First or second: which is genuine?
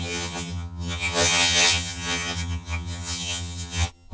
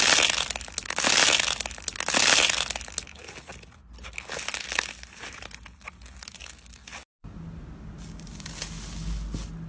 second